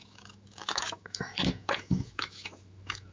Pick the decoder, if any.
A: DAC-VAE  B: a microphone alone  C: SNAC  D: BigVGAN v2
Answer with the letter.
A